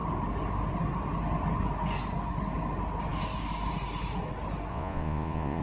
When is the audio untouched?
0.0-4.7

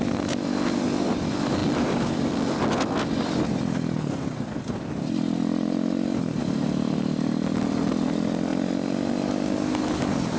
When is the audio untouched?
0.0-10.4

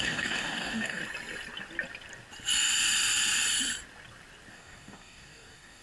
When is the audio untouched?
1.0-4.5

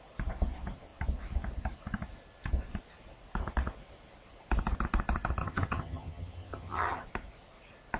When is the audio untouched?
0.0-5.4; 7.0-8.0